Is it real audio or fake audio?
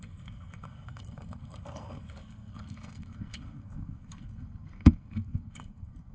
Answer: fake